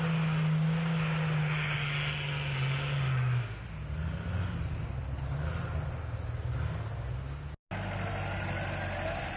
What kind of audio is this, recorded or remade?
recorded